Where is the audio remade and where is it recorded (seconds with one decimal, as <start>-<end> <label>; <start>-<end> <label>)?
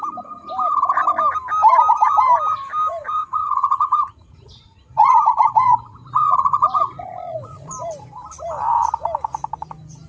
0.0-3.0 recorded; 3.0-7.7 remade; 7.7-10.1 recorded